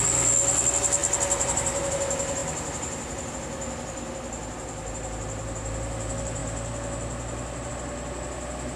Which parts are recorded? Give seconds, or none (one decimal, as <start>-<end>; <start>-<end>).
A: 0.0-8.8

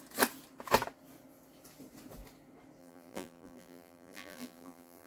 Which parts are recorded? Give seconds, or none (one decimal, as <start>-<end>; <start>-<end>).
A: 0.0-2.8

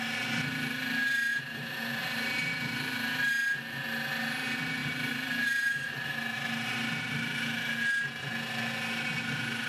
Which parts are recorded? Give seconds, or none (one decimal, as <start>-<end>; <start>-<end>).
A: 0.0-1.3; 2.0-4.8; 6.1-9.7

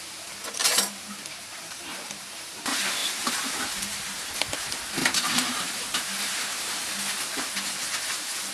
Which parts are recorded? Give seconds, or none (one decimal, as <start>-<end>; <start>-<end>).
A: 0.0-0.6; 2.6-3.0; 4.3-5.0; 6.9-8.5

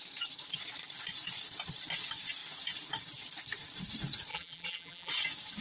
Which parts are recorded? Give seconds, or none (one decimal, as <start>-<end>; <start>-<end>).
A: 0.0-4.3; 5.1-5.6

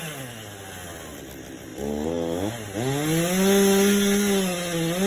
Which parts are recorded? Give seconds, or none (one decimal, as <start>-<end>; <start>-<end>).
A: 0.0-5.1

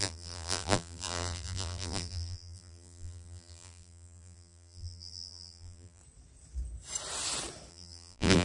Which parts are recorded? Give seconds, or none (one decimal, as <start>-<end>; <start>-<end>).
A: 6.0-7.7

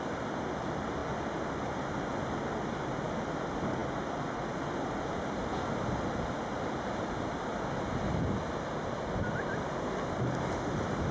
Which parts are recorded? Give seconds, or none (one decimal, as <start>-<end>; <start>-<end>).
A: 0.0-3.8; 4.4-11.1